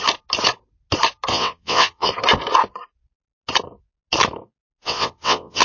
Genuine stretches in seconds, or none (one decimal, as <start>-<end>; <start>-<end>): 0.0-1.3; 2.1-4.8